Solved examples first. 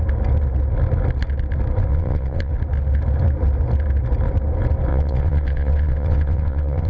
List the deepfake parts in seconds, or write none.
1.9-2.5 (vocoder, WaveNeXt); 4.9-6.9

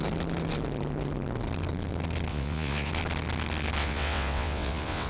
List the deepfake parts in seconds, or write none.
2.3-2.9 (vocoder, WaveNeXt); 3.8-5.1

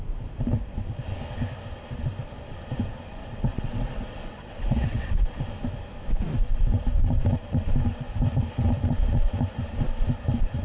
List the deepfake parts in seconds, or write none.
3.2-5.1 (vocoder, WaveNeXt)